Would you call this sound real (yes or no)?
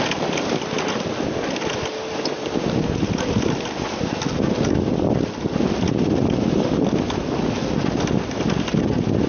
yes